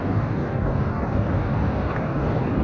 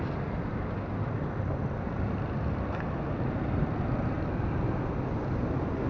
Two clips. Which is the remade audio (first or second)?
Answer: first